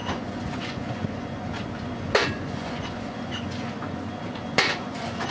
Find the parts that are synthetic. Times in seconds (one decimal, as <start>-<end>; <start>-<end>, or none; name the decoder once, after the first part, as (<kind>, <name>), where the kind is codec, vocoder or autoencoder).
0.0-5.3 (vocoder, Vocos)